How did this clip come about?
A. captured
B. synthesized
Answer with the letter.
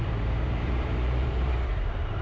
B